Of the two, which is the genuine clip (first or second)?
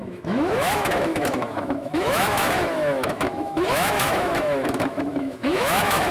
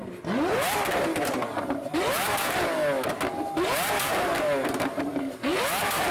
second